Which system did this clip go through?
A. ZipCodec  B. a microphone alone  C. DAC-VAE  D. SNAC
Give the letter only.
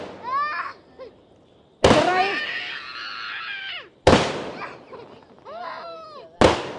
B